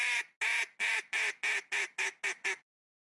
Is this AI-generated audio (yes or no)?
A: no